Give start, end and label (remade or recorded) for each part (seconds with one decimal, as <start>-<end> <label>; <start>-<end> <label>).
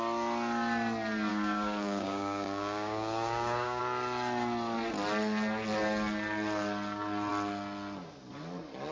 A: 0.0-1.3 recorded; 1.3-3.8 remade; 3.8-8.9 recorded